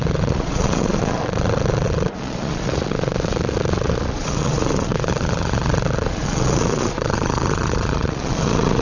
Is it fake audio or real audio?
fake